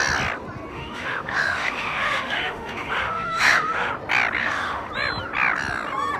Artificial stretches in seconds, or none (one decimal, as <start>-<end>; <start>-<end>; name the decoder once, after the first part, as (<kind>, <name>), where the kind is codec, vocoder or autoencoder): 0.7-3.9 (autoencoder, DAC-VAE); 4.4-4.9